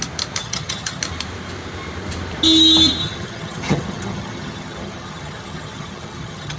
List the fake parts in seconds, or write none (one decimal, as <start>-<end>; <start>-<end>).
0.4-1.0; 3.0-6.6